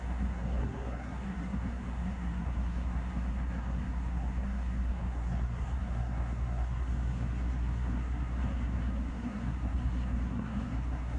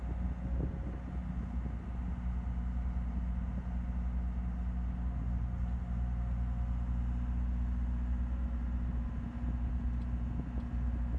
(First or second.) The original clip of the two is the second